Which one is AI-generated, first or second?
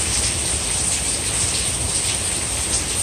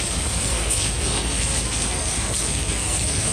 second